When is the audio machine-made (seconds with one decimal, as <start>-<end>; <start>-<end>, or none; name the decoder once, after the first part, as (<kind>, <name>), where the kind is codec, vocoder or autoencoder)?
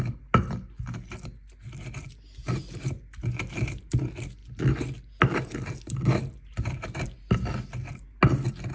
none